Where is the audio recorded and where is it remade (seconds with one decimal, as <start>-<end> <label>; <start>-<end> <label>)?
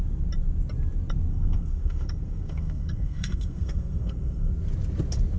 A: 0.0-1.3 recorded; 1.3-4.5 remade; 4.5-5.4 recorded